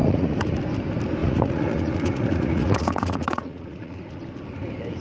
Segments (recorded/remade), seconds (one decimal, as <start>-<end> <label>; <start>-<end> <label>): 0.0-0.6 remade; 0.6-1.2 recorded; 1.2-4.2 remade; 4.2-5.0 recorded